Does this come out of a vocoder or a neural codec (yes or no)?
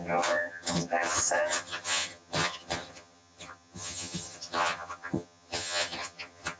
yes